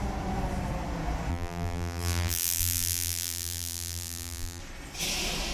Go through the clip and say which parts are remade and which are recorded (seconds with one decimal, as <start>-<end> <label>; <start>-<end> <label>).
0.0-1.3 recorded; 1.3-4.6 remade; 4.6-5.5 recorded